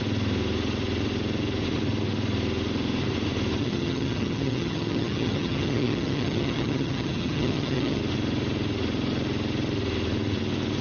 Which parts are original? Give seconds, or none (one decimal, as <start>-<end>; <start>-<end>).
0.0-3.6; 8.0-10.8